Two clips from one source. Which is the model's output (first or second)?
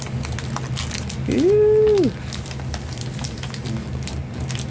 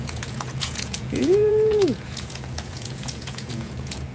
second